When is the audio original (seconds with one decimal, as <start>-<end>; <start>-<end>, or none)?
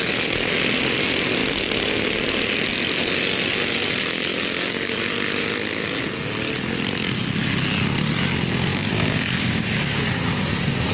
0.0-4.3; 4.9-8.7; 10.0-10.9